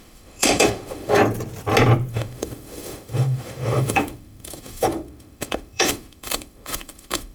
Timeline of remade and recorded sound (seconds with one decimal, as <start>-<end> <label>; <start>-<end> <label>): 0.0-1.2 remade; 1.2-2.1 recorded; 2.1-7.3 remade